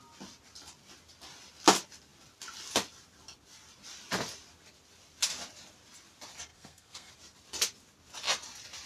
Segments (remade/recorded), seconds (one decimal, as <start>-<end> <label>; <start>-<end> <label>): 0.0-6.5 recorded; 6.5-7.1 remade; 7.1-8.9 recorded